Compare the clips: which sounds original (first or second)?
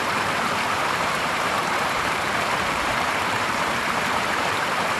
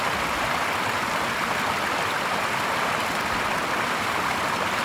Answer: second